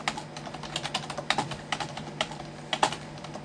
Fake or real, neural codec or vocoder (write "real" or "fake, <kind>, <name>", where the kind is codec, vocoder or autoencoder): real